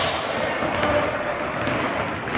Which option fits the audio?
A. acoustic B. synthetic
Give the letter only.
A